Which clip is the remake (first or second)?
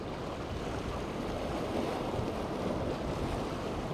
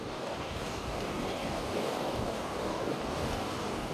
second